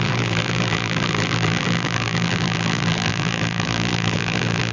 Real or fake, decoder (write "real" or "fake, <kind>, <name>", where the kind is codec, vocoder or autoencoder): fake, vocoder, BigVGAN v2